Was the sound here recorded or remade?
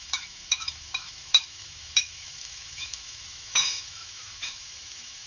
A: remade